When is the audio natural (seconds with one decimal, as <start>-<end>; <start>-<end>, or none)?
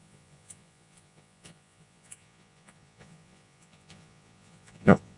none